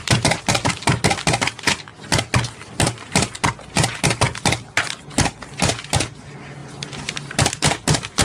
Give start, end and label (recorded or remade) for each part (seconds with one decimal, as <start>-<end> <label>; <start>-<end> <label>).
0.0-8.2 recorded